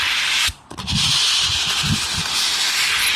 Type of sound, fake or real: real